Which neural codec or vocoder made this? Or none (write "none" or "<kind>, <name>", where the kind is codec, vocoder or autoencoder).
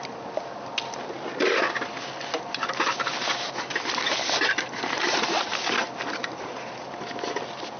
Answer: none